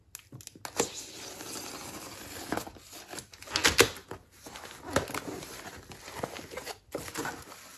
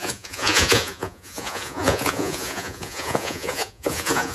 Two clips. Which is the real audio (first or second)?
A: first